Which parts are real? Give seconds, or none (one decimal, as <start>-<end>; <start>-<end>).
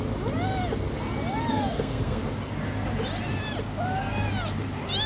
0.0-1.5; 2.2-5.1